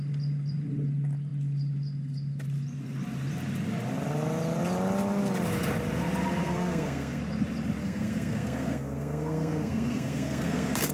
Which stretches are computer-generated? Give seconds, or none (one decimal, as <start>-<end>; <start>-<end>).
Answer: 6.4-7.2; 7.8-10.9